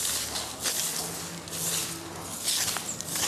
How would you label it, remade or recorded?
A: recorded